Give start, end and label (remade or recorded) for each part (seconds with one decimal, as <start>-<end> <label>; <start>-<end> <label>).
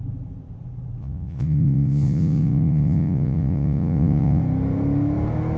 0.0-1.0 recorded; 1.0-4.4 remade; 4.4-5.6 recorded